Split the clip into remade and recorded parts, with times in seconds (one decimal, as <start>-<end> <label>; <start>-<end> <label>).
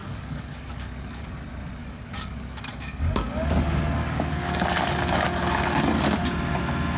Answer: 0.0-1.3 remade; 1.3-1.8 recorded; 1.8-6.0 remade; 6.0-7.0 recorded